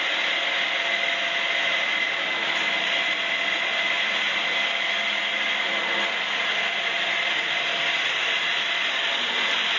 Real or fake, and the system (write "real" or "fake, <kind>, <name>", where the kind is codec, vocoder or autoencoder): real